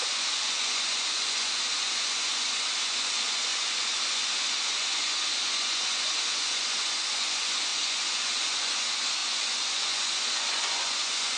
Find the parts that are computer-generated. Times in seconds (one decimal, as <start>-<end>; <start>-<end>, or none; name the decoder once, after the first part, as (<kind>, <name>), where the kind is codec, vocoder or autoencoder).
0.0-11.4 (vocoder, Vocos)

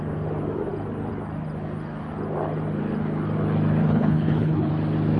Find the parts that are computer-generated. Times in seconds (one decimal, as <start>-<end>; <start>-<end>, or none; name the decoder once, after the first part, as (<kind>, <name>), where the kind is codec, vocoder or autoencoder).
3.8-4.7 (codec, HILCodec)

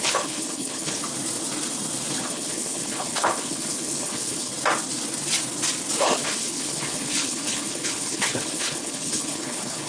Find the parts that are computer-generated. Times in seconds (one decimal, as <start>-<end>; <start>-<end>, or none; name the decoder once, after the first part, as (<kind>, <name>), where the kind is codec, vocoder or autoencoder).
0.0-1.0 (codec, HILCodec); 2.2-4.5; 6.0-9.9

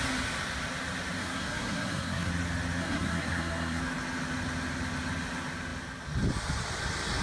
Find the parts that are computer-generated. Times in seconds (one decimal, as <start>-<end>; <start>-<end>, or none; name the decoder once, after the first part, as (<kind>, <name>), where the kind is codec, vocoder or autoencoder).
1.2-2.3 (codec, SNAC); 2.8-3.8

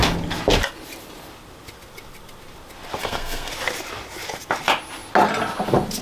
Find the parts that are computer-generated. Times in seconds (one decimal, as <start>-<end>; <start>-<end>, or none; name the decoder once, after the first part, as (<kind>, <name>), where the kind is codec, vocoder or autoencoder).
3.0-3.5 (codec, SNAC)